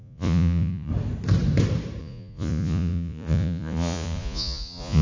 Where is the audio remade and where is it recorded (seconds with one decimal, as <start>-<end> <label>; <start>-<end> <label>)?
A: 0.0-0.9 remade; 0.9-2.0 recorded; 2.0-5.0 remade